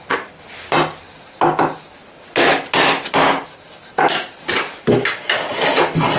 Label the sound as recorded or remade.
recorded